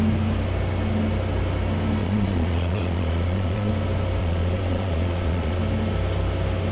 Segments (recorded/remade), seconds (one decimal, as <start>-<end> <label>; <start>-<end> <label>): 0.0-2.0 recorded; 2.0-3.7 remade; 3.7-4.2 recorded; 4.2-5.6 remade; 5.6-6.7 recorded